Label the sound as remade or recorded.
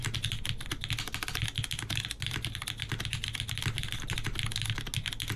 recorded